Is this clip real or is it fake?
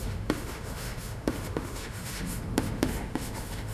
fake